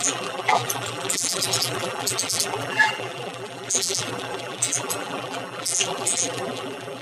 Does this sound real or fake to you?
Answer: fake